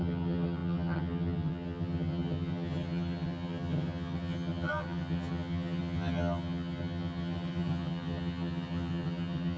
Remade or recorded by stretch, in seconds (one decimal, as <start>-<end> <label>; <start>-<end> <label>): 0.0-9.6 remade